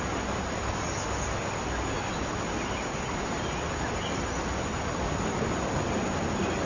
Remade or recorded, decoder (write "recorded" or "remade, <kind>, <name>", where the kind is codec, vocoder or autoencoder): recorded